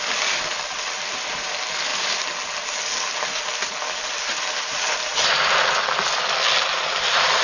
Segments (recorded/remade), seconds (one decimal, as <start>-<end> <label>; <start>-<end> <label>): 0.0-4.3 recorded; 4.3-5.8 remade; 5.8-6.7 recorded; 6.7-7.4 remade